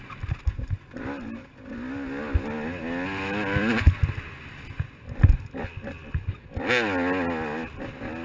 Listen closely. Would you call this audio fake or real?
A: real